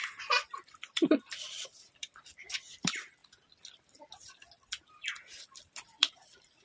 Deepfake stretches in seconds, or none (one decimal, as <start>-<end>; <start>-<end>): 0.6-3.2; 5.6-6.6